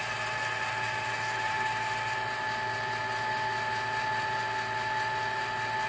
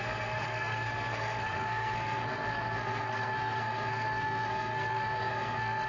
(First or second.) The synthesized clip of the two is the second